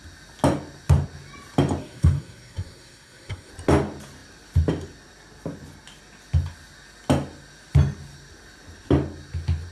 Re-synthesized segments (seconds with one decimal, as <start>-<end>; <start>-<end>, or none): 1.8-3.5